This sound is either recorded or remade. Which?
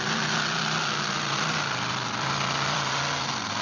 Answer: remade